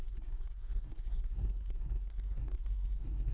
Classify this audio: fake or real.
fake